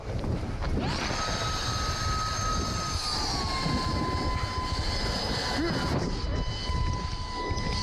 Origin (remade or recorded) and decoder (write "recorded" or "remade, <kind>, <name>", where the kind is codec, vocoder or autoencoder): recorded